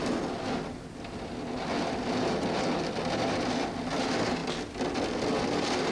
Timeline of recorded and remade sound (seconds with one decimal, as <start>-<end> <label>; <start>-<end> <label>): 0.0-5.9 recorded

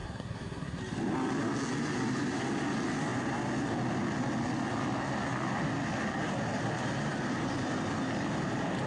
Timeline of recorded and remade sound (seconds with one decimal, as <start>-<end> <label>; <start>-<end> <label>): 0.0-0.8 remade; 0.8-8.9 recorded

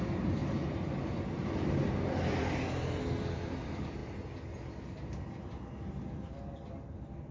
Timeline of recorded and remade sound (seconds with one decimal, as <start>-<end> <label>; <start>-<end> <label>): 0.0-7.3 recorded

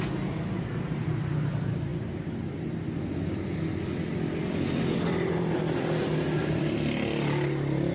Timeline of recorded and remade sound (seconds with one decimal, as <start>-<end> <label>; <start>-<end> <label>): 0.0-7.9 recorded

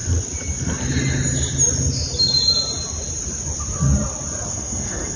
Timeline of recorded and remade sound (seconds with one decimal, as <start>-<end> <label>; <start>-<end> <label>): 0.0-4.5 recorded; 4.5-5.2 remade

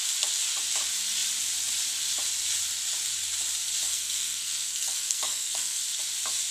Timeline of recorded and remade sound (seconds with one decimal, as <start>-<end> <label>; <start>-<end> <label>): 0.0-3.9 recorded; 3.9-5.8 remade; 5.8-6.5 recorded